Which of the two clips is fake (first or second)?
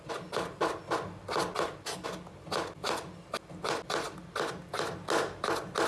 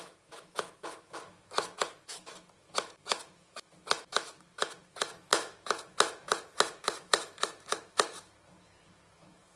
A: second